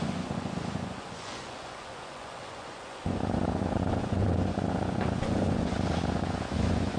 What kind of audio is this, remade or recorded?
remade